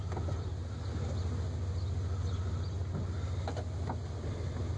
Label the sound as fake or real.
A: real